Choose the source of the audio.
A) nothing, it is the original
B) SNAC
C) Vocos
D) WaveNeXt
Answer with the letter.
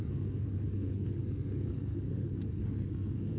B